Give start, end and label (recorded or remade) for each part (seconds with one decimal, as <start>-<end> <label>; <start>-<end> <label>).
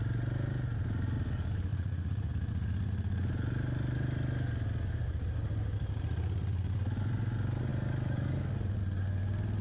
0.0-1.7 recorded; 1.7-2.3 remade; 2.3-9.6 recorded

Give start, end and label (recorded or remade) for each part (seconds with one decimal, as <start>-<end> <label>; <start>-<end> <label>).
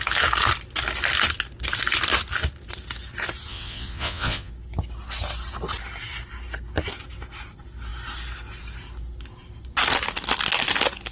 0.0-3.5 recorded; 3.5-4.5 remade; 4.5-11.1 recorded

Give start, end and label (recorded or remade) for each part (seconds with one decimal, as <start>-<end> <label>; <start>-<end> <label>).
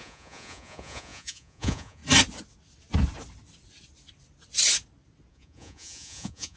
0.0-2.0 remade; 2.0-5.3 recorded; 5.3-6.6 remade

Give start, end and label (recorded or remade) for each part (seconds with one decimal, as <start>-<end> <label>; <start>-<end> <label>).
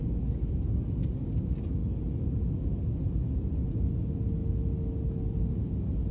0.0-6.1 recorded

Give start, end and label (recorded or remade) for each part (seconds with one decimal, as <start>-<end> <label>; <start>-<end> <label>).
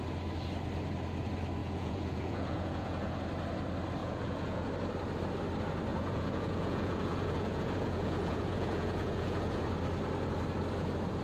0.0-1.6 recorded; 1.6-3.2 remade; 3.2-4.0 recorded; 4.0-4.7 remade; 4.7-5.9 recorded; 5.9-9.6 remade; 9.6-11.2 recorded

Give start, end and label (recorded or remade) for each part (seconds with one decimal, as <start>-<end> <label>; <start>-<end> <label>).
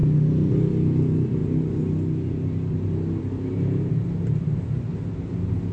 0.0-5.7 recorded